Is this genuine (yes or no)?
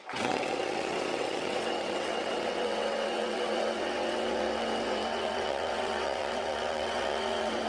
no